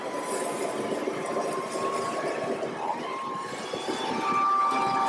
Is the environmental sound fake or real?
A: real